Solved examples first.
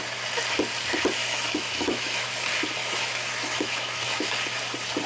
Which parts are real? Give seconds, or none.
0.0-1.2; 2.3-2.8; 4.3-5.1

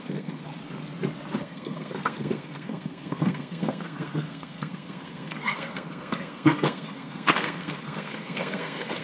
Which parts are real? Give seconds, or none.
0.5-1.4

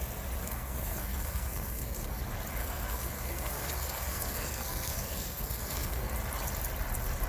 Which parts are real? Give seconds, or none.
0.0-0.4; 2.2-2.6; 6.1-7.3